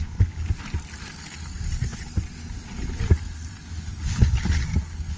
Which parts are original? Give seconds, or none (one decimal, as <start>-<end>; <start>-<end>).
0.0-5.2